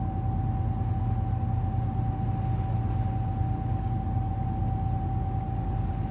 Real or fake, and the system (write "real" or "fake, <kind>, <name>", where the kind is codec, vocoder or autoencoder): real